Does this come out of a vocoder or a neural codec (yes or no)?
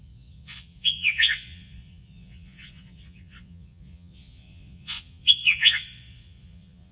yes